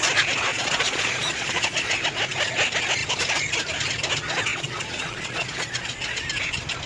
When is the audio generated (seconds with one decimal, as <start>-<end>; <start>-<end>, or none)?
0.5-1.9; 4.5-6.2